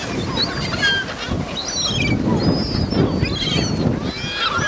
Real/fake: real